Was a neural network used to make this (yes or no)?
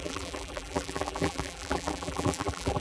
yes